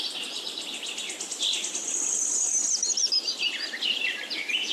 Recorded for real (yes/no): yes